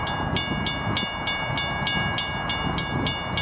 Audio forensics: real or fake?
real